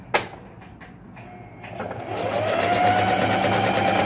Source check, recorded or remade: recorded